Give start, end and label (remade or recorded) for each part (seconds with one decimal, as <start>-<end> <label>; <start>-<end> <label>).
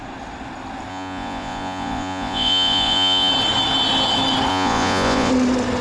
0.0-0.9 recorded; 0.9-3.3 remade; 3.3-4.5 recorded; 4.5-5.3 remade; 5.3-5.8 recorded